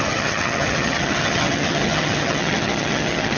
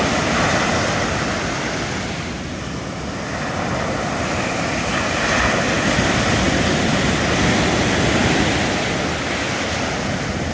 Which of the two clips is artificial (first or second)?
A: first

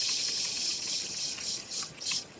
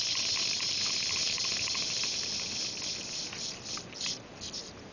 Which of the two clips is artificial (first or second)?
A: first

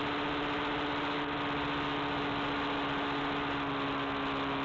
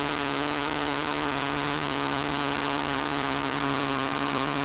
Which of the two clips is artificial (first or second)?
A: second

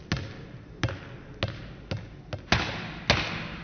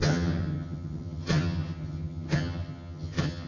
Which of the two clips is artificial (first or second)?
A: second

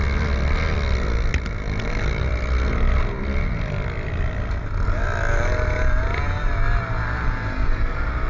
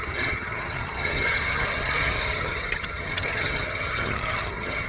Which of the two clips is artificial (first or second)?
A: second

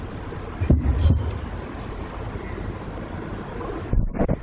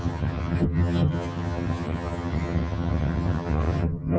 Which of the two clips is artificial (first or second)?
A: second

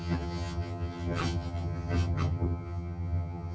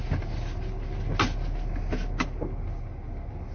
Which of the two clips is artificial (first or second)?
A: first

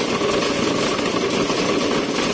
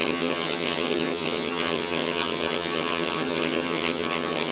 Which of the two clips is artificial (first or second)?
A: second